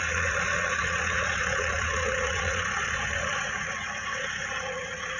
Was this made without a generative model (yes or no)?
no